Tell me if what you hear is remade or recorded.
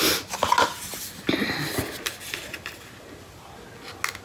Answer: recorded